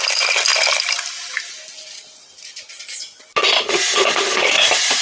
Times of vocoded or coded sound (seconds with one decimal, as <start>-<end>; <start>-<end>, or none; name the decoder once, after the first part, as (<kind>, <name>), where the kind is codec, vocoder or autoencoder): 3.3-4.5 (vocoder, Vocos)